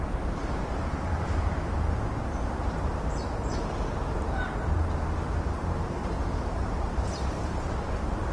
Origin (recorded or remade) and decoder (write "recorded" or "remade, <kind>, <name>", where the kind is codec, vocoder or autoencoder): remade, vocoder, BigVGAN v2